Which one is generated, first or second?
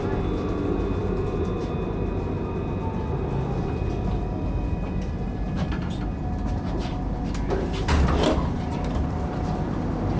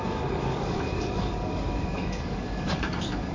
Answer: second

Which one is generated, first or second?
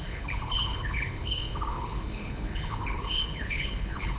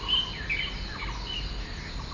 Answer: first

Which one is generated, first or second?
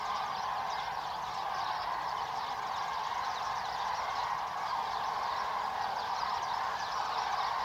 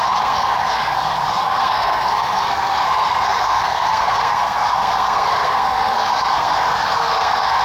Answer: second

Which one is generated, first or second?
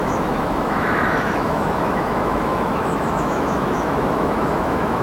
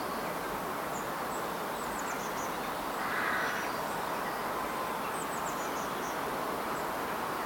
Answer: first